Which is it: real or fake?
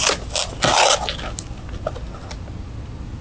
real